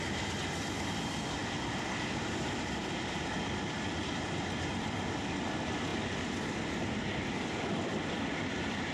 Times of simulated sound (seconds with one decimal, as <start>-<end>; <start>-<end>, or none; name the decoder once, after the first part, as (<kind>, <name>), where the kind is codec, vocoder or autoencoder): 0.0-5.9 (vocoder, BigVGAN v2); 7.6-8.9